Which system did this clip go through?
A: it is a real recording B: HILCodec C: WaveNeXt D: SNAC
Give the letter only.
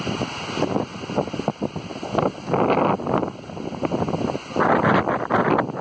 A